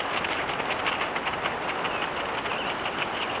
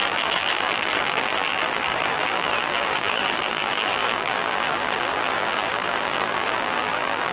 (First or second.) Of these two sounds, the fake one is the second